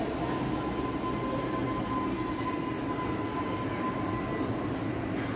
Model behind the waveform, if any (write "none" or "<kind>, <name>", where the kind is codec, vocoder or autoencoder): none